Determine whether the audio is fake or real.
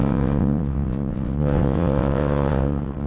fake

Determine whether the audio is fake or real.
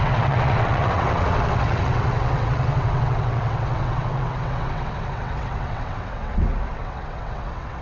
fake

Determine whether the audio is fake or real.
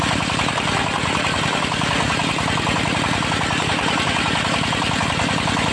real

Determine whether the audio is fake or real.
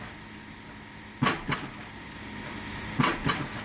real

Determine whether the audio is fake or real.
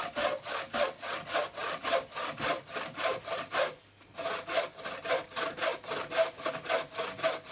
real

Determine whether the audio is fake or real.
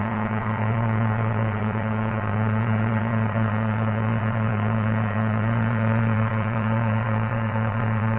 fake